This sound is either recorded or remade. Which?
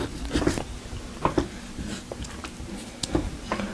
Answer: recorded